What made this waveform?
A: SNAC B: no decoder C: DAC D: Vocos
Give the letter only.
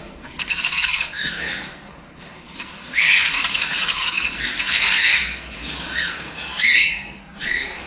A